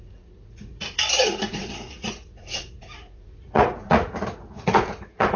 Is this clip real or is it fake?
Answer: fake